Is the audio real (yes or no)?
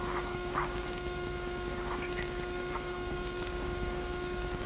no